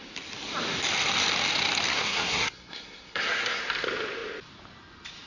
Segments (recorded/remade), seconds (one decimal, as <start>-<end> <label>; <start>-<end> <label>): 0.0-1.9 recorded; 1.9-3.6 remade; 3.6-5.3 recorded